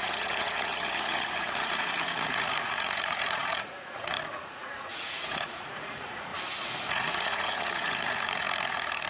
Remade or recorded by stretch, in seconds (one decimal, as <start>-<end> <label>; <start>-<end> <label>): 0.0-6.3 remade; 6.3-6.9 recorded; 6.9-8.4 remade; 8.4-9.1 recorded